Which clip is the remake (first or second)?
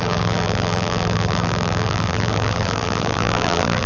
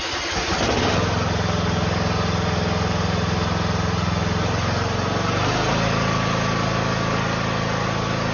first